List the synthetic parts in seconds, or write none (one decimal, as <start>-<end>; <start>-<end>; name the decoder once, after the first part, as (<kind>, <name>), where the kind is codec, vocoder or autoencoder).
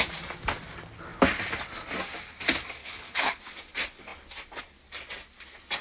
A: 2.8-3.4 (codec, HILCodec)